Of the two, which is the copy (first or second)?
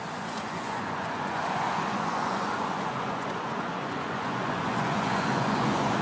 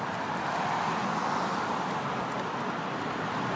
first